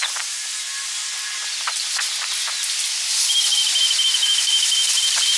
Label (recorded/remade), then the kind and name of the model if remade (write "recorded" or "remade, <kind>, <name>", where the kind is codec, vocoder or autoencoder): recorded